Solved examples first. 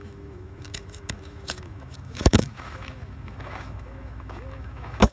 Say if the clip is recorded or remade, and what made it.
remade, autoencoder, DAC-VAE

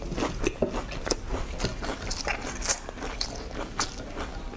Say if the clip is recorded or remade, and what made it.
recorded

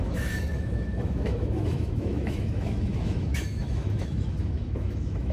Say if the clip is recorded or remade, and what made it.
remade, autoencoder, DAC-VAE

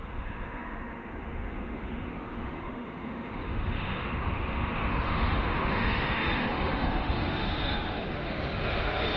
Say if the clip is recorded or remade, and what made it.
remade, autoencoder, DAC-VAE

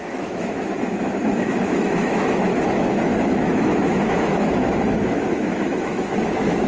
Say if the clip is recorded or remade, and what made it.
remade, autoencoder, DAC-VAE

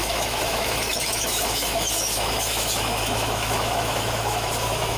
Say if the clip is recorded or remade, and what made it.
remade, autoencoder, DAC-VAE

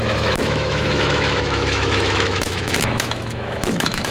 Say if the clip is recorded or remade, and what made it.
remade, autoencoder, DAC-VAE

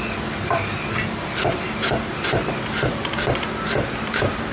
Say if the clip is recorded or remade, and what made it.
recorded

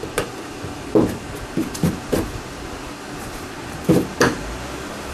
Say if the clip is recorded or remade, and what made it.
recorded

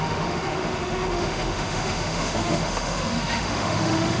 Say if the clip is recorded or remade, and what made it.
remade, autoencoder, DAC-VAE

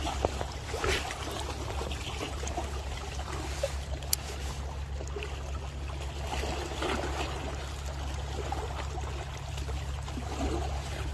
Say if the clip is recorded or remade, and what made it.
recorded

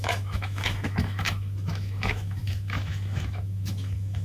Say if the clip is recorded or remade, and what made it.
remade, autoencoder, DAC-VAE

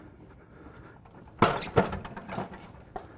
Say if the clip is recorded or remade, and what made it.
recorded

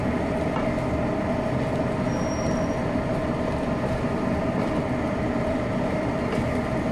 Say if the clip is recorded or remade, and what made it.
recorded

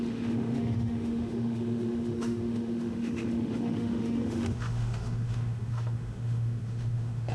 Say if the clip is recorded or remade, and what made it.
remade, autoencoder, DAC-VAE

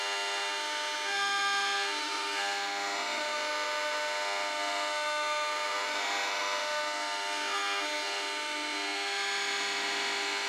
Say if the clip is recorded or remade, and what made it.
remade, autoencoder, DAC-VAE